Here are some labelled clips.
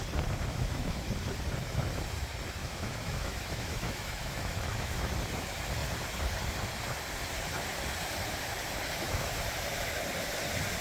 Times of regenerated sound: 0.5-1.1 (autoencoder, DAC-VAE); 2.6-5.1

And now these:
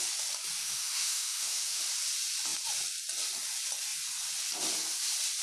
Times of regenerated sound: 0.6-1.8 (autoencoder, DAC-VAE)

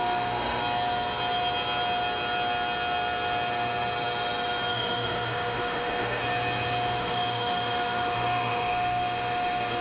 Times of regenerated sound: 0.0-0.6 (autoencoder, DAC-VAE); 4.7-6.2; 7.0-9.8